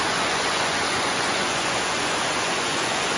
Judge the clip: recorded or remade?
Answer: remade